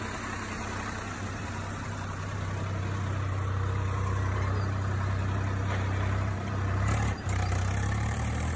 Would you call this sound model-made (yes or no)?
yes